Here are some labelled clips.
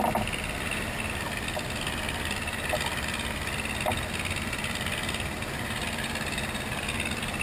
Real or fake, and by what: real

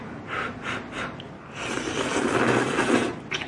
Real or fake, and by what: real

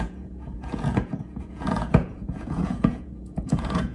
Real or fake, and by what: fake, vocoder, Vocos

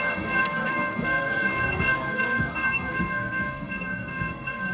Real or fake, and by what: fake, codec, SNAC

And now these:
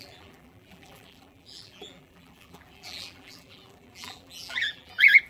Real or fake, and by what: fake, vocoder, BigVGAN v2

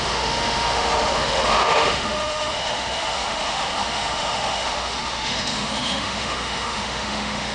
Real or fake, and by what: fake, autoencoder, DAC-VAE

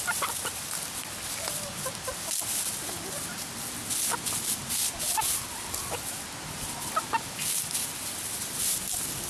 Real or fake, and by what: real